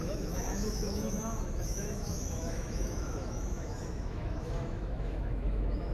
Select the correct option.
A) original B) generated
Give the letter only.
B